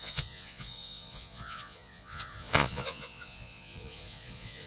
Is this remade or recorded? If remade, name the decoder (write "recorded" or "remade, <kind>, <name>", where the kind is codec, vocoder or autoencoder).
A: remade, vocoder, Vocos